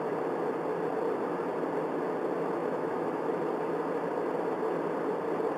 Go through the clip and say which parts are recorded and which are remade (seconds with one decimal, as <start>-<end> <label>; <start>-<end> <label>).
0.0-2.6 recorded; 2.6-3.3 remade; 3.3-5.6 recorded